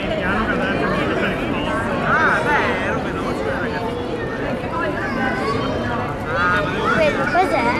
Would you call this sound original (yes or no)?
yes